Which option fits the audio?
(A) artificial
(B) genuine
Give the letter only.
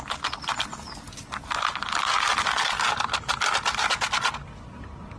B